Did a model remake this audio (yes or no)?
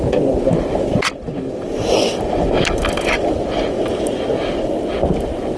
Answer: no